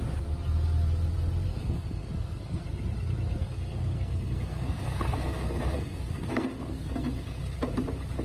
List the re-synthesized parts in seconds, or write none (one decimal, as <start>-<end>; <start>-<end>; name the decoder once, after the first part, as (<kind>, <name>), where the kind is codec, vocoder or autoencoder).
1.5-2.6 (codec, SNAC); 3.4-7.4

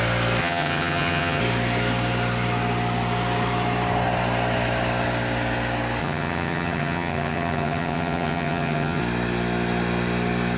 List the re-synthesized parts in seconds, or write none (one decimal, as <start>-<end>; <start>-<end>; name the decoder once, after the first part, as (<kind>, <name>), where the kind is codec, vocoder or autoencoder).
0.4-1.4 (vocoder, HiFi-GAN); 6.0-9.0

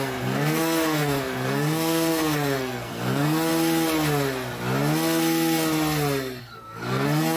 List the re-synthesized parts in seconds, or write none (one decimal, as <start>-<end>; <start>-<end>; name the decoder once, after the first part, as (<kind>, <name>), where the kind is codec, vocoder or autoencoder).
0.0-3.5 (codec, SNAC); 6.4-7.4

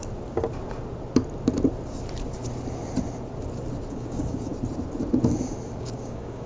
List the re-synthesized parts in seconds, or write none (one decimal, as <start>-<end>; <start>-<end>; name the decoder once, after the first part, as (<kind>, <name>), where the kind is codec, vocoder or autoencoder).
3.9-4.5 (codec, DAC); 5.8-6.5

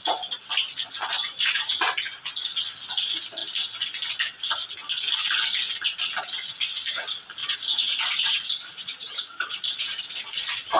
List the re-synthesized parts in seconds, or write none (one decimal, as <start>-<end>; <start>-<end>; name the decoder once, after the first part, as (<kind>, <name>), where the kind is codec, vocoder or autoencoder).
1.2-1.8 (vocoder, Vocos); 7.4-10.2

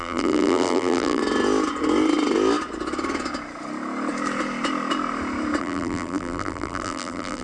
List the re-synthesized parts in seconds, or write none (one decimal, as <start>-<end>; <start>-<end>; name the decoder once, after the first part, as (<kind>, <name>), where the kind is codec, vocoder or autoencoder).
0.0-1.2 (vocoder, BigVGAN v2); 5.6-7.4